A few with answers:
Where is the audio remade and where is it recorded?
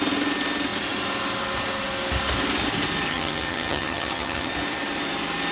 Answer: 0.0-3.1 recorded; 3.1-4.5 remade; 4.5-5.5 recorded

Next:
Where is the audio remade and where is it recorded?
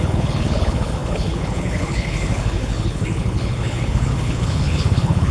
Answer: 0.0-5.3 remade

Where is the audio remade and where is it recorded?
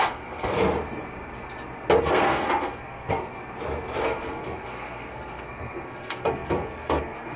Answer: 0.0-0.5 remade; 0.5-2.0 recorded; 2.0-3.4 remade; 3.4-4.0 recorded; 4.0-7.4 remade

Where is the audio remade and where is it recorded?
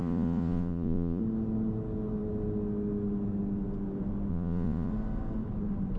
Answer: 0.0-1.2 remade; 1.2-4.3 recorded; 4.3-4.9 remade; 4.9-6.0 recorded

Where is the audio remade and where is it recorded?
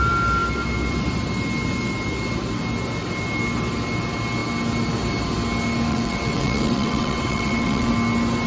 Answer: 0.0-5.9 recorded; 5.9-7.9 remade; 7.9-8.5 recorded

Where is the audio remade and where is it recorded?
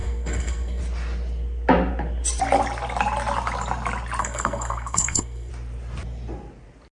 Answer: 0.0-0.8 remade; 0.8-4.2 recorded; 4.2-5.5 remade; 5.5-6.9 recorded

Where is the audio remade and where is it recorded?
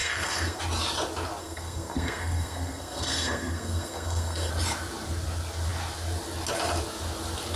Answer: 0.0-0.6 remade; 0.6-1.4 recorded; 1.4-4.5 remade; 4.5-7.6 recorded